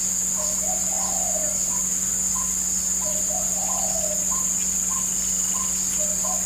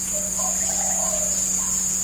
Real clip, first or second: first